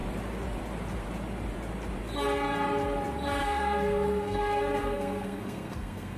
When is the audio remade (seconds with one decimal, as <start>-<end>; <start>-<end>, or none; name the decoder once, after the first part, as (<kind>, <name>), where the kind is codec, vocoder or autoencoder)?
3.4-6.2 (codec, SNAC)